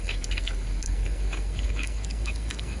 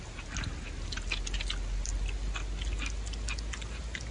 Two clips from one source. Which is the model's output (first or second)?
first